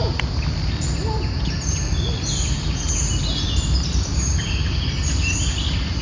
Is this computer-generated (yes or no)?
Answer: no